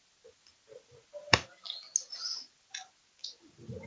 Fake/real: real